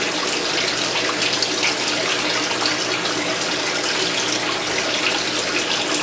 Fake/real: real